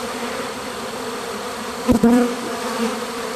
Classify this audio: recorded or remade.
remade